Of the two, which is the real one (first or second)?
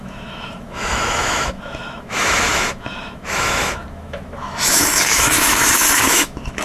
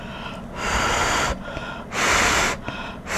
second